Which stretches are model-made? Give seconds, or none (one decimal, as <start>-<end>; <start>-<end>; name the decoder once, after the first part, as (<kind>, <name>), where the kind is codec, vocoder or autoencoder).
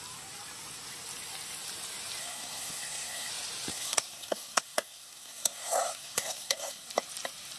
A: 2.2-3.3 (codec, SNAC); 3.7-6.9